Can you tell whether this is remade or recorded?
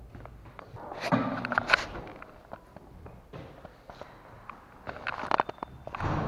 recorded